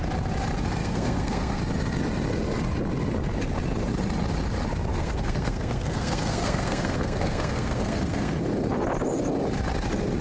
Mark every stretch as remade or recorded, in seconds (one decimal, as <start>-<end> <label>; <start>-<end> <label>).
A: 0.0-0.8 recorded; 0.8-1.6 remade; 1.6-4.9 recorded; 4.9-8.4 remade; 8.4-10.2 recorded